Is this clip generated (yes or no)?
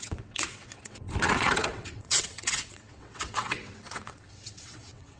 yes